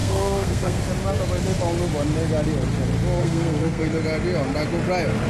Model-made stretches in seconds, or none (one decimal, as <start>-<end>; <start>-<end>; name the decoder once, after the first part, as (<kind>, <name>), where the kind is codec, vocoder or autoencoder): 0.0-0.8 (codec, SNAC); 3.2-3.8